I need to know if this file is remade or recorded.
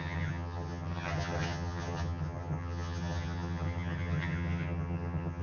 remade